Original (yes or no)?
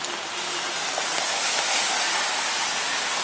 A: yes